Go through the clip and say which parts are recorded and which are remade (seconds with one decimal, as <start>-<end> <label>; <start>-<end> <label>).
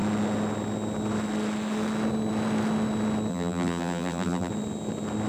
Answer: 0.0-3.3 recorded; 3.3-4.5 remade; 4.5-5.3 recorded